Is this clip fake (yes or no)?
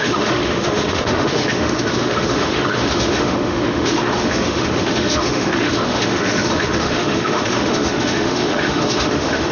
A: yes